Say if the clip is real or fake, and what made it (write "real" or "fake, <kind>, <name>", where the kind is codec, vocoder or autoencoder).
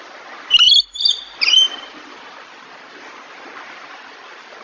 real